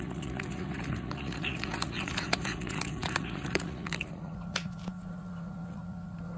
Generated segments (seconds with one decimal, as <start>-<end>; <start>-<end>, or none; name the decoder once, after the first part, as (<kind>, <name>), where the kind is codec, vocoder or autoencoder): 0.0-6.4 (vocoder, Vocos)